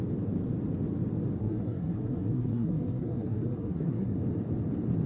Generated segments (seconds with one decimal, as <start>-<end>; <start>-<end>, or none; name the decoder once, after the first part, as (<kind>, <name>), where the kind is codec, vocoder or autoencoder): 1.4-4.2 (codec, SNAC)